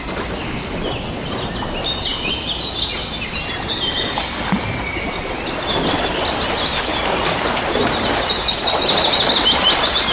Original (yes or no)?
yes